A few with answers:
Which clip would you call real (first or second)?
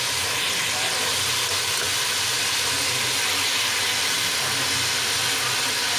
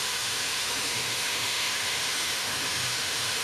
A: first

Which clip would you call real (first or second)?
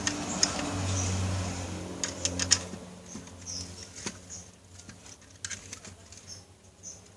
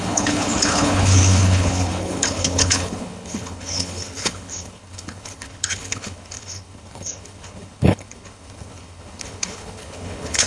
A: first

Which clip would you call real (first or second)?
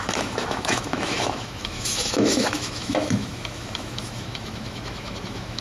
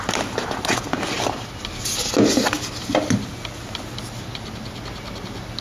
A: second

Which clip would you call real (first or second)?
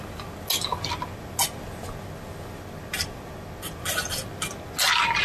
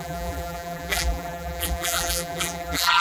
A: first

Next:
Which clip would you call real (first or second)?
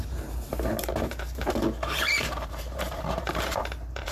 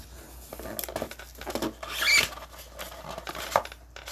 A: second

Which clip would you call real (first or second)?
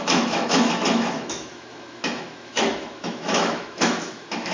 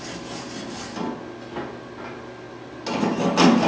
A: second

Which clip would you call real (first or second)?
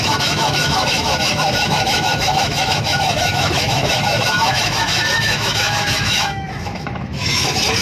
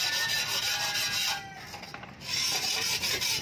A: second